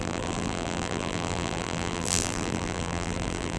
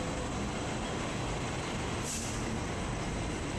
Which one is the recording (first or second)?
second